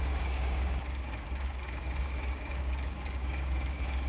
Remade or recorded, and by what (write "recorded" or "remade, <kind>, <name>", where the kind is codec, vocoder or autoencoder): remade, codec, DAC